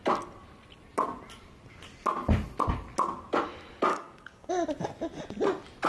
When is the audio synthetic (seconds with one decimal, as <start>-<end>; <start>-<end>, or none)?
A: 3.9-4.5